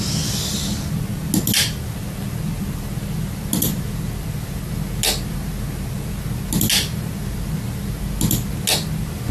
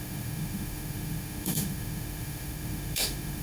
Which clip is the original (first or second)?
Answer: first